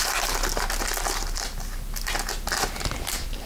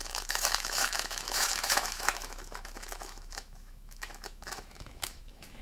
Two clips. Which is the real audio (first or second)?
first